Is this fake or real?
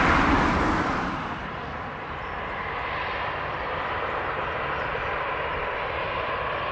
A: real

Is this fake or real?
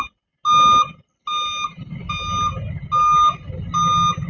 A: real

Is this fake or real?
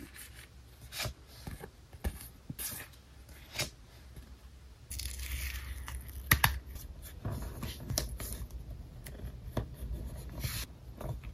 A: real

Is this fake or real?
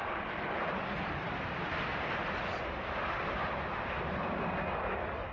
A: real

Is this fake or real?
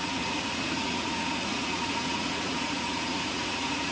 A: fake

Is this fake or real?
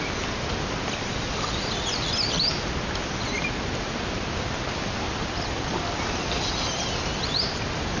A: real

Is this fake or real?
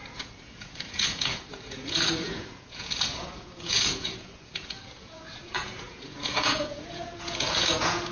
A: fake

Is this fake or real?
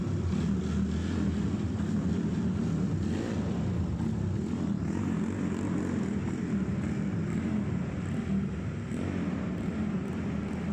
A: real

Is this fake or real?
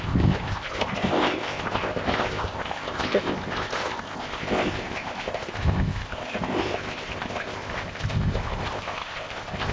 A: fake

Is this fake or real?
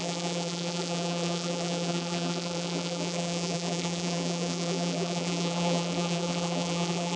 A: fake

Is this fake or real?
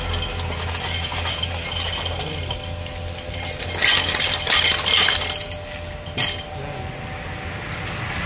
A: real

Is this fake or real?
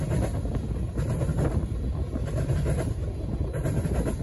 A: real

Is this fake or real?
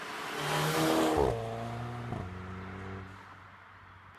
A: real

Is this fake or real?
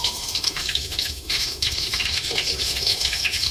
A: fake